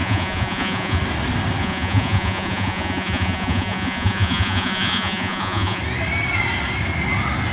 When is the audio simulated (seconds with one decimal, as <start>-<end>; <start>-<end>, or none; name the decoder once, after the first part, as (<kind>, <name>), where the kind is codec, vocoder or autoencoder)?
0.0-1.0 (vocoder, Vocos); 1.6-5.8

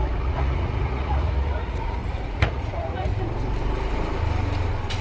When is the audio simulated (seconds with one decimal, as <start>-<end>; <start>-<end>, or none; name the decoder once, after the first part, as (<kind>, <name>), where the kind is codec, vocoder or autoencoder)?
0.0-3.1 (vocoder, Vocos)

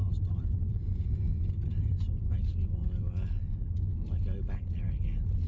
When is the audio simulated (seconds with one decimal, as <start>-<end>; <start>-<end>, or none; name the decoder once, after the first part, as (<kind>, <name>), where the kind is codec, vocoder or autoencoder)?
none

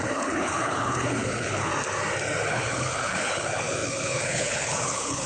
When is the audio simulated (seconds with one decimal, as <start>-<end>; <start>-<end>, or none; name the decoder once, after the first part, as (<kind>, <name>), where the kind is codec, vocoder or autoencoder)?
0.0-1.7 (codec, HILCodec); 2.5-5.3

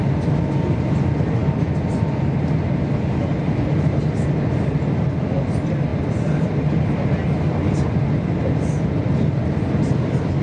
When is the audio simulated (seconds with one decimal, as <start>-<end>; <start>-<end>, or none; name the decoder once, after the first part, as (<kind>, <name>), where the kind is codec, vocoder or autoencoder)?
none